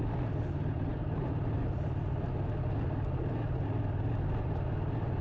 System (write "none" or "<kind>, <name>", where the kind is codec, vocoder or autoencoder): none